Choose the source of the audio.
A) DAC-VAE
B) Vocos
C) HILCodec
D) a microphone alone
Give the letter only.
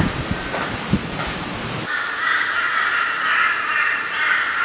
D